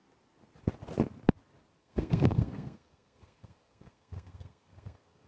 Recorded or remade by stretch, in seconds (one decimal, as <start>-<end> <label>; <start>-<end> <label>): 0.0-1.8 recorded; 1.8-5.3 remade